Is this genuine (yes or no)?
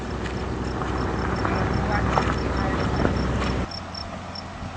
yes